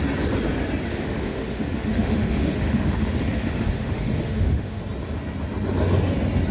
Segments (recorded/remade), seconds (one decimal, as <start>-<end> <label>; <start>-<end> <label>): 0.0-0.9 recorded; 0.9-4.8 remade; 4.8-6.5 recorded